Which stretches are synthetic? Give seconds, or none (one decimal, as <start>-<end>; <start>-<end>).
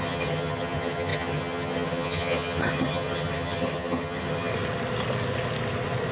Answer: 0.0-4.5